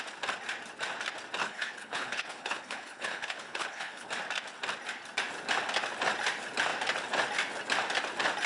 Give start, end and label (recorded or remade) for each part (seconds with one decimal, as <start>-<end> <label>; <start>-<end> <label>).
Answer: 0.0-1.4 recorded; 1.4-4.1 remade; 4.1-8.5 recorded